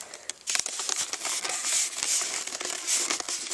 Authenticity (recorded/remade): recorded